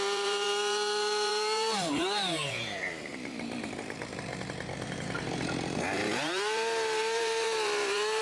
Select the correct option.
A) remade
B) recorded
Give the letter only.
A